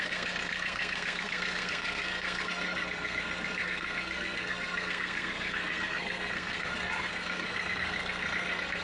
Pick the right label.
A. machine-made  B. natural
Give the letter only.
A